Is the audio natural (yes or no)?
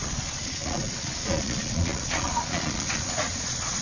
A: no